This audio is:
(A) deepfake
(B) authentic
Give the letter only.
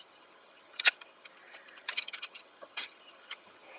A